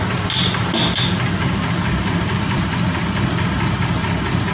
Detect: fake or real real